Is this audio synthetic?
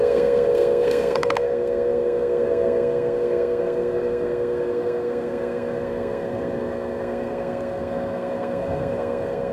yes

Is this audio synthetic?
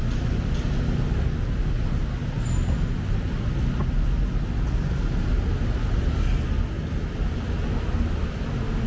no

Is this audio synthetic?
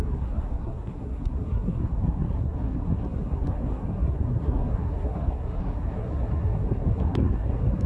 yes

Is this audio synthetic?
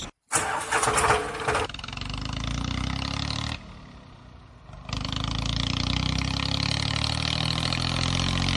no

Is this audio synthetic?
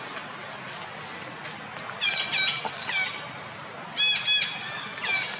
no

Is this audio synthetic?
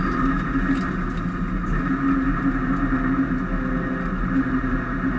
no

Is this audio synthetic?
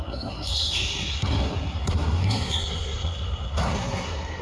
yes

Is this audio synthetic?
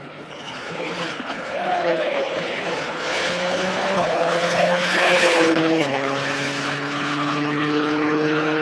yes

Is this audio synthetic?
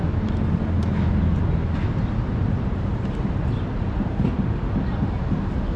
no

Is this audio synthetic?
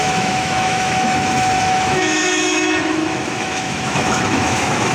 yes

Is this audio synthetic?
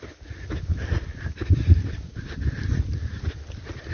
no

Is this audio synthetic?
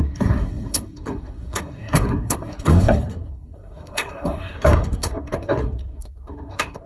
yes